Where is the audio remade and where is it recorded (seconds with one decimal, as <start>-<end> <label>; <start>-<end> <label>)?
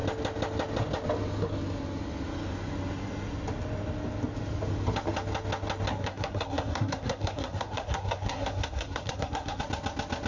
0.0-5.9 recorded; 5.9-9.6 remade; 9.6-10.3 recorded